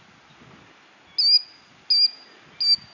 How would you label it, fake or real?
real